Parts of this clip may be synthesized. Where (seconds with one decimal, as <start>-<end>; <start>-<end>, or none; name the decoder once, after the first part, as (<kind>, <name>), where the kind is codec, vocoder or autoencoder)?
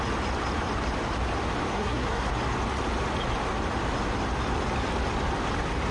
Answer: 1.7-2.3 (codec, SNAC)